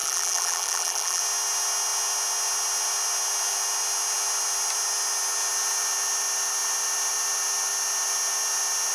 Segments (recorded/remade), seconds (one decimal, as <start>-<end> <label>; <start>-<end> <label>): 0.0-1.2 remade; 1.2-8.9 recorded